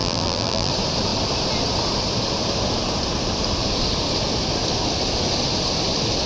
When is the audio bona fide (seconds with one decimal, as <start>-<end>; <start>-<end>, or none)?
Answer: 0.7-6.3